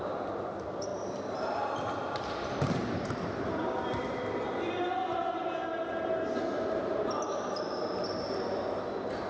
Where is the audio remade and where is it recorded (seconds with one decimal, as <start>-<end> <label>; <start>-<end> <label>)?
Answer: 0.0-9.3 recorded